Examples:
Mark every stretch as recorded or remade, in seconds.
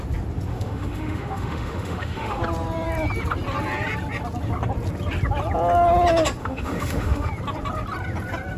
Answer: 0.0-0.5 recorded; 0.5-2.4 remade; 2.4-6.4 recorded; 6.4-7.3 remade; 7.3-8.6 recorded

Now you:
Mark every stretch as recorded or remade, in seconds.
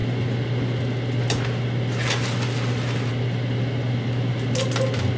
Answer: 0.0-5.2 recorded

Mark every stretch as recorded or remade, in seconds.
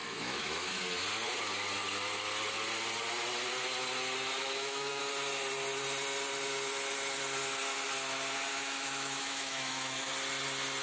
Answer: 0.0-0.8 remade; 0.8-4.4 recorded; 4.4-5.0 remade; 5.0-8.5 recorded; 8.5-10.1 remade; 10.1-10.8 recorded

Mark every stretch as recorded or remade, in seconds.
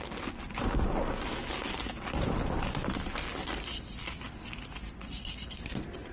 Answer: 0.0-6.1 recorded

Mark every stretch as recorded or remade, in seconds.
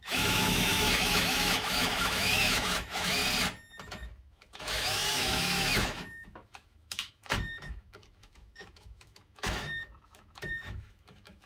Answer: 0.0-3.2 remade; 3.2-3.8 recorded; 3.8-11.5 remade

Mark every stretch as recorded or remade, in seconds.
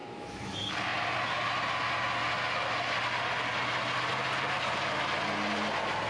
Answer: 0.0-0.5 remade; 0.5-6.1 recorded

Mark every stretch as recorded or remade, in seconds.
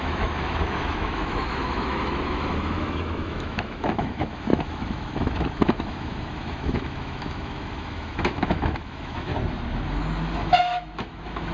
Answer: 0.0-9.3 remade; 9.3-10.6 recorded; 10.6-11.5 remade